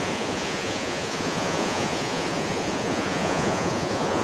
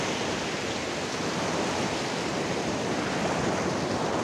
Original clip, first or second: second